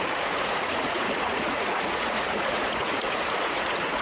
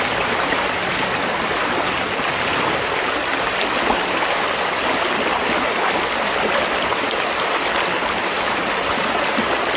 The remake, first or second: first